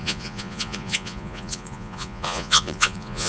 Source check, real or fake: fake